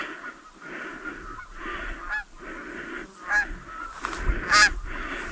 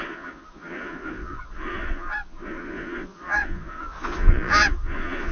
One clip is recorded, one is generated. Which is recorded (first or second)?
first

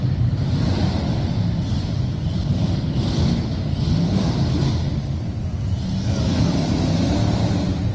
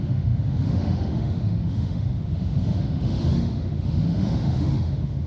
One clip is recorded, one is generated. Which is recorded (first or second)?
first